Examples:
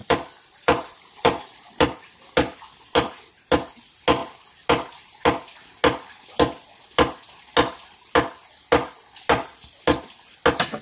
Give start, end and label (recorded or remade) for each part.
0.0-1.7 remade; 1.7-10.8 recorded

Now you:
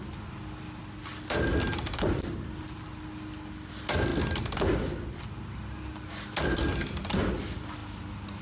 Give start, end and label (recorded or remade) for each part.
0.0-8.4 recorded

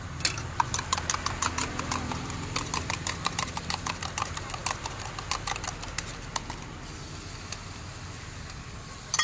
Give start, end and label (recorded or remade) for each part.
0.0-1.6 recorded; 1.6-4.0 remade; 4.0-9.2 recorded

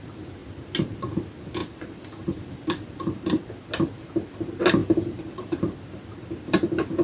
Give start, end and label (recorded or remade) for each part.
0.0-1.6 recorded; 1.6-3.5 remade; 3.5-4.8 recorded; 4.8-7.0 remade

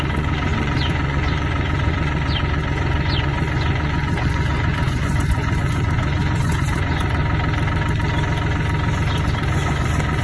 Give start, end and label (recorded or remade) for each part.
0.0-7.2 remade; 7.2-9.1 recorded; 9.1-10.2 remade

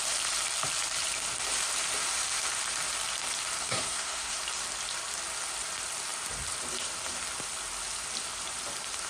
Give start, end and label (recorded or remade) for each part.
0.0-3.6 recorded; 3.6-4.4 remade; 4.4-9.1 recorded

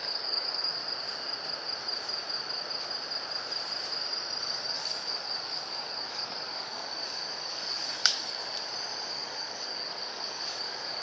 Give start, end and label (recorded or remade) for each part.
0.0-0.8 remade; 0.8-4.4 recorded; 4.4-8.4 remade; 8.4-9.0 recorded; 9.0-11.0 remade